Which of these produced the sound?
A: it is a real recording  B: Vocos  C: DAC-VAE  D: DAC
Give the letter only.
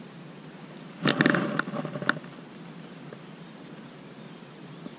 A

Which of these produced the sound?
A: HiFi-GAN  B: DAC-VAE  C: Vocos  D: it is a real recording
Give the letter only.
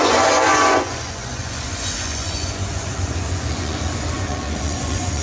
C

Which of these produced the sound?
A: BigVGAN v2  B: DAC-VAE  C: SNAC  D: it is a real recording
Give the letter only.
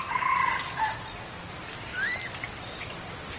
D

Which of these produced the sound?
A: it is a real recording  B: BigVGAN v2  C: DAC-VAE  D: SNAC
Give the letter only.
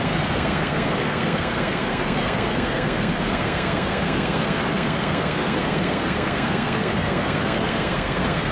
D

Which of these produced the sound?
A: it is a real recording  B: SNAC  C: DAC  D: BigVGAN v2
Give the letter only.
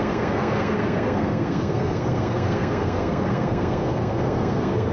B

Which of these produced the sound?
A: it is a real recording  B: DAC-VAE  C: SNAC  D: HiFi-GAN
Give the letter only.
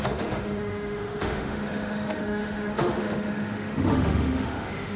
B